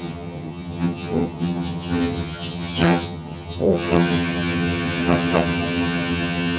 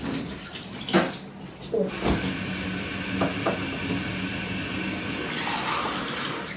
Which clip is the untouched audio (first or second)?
second